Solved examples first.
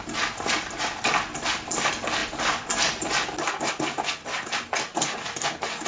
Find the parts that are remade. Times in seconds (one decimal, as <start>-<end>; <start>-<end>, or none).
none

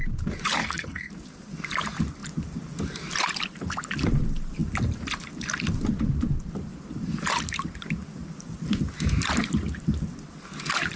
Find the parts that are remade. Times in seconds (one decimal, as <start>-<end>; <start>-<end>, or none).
0.6-1.1

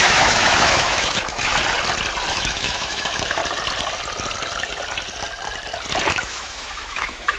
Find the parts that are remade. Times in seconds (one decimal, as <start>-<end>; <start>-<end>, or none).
0.0-1.6; 2.3-3.4; 6.1-7.4

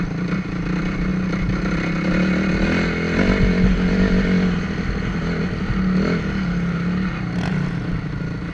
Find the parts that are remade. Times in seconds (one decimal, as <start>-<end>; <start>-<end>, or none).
none

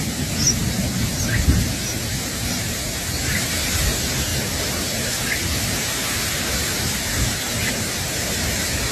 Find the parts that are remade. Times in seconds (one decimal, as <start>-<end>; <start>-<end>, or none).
none